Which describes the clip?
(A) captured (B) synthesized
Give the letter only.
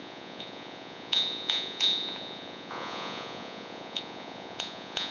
B